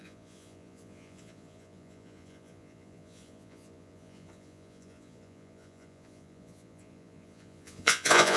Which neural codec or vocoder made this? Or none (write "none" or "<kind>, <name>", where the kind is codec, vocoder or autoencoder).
vocoder, Vocos